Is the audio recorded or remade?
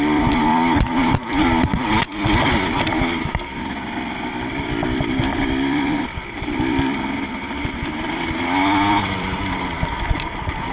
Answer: remade